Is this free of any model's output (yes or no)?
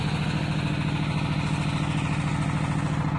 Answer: yes